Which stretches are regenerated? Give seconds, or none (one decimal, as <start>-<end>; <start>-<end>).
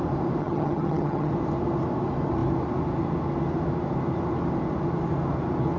0.4-1.3